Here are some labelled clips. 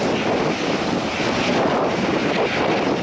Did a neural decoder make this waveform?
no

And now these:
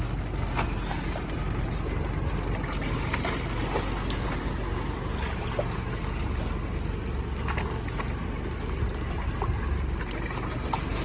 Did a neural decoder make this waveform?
no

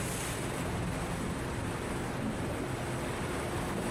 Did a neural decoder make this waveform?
no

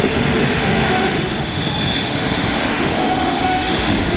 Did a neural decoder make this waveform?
yes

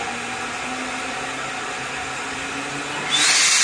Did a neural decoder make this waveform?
no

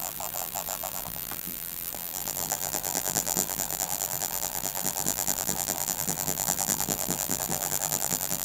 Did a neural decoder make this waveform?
yes